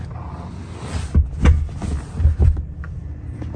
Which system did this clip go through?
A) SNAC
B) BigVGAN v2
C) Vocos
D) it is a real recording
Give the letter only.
D